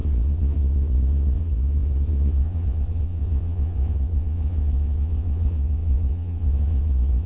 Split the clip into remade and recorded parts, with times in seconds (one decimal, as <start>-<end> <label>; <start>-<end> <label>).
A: 0.0-7.3 remade